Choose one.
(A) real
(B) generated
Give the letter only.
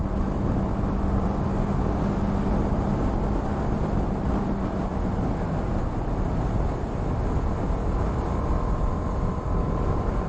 A